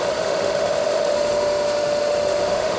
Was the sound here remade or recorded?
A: remade